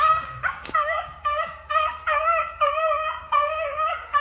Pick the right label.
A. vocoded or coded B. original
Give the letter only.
A